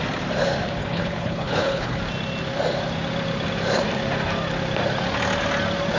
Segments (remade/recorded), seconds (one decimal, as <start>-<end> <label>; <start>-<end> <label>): 0.0-0.8 recorded; 0.8-2.0 remade; 2.0-6.0 recorded